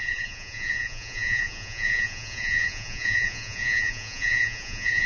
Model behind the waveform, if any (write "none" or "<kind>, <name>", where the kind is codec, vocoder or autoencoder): vocoder, Vocos